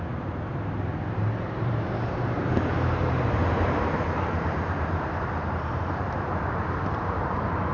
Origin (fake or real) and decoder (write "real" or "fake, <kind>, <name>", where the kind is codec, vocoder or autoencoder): fake, vocoder, BigVGAN v2